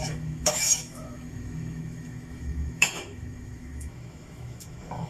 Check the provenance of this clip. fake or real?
fake